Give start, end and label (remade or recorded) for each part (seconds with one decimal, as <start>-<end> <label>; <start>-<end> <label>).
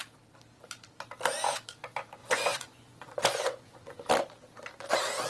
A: 0.0-2.2 recorded; 2.2-4.1 remade; 4.1-5.3 recorded